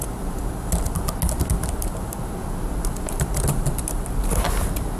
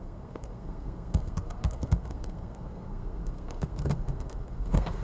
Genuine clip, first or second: first